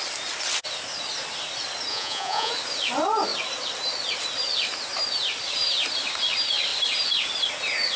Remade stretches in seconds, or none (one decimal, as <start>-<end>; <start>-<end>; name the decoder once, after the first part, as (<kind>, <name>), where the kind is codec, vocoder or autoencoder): 1.9-2.5 (vocoder, Vocos)